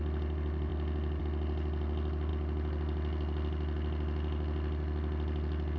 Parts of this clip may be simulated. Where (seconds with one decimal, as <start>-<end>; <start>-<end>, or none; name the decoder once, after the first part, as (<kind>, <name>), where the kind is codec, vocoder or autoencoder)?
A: none